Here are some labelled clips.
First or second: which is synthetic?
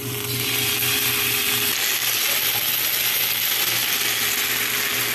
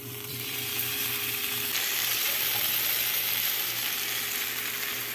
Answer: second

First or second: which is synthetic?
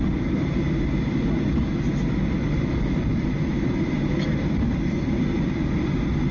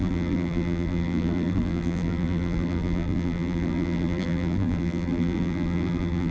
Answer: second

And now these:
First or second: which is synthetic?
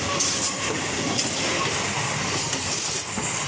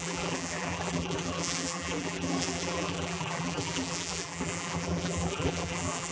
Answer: second